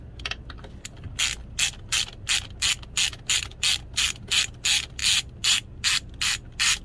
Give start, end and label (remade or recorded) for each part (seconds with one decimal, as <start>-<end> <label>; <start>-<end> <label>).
0.0-6.8 recorded